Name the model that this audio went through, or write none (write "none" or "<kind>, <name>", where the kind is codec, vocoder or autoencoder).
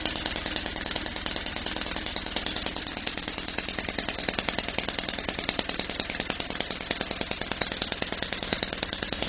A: none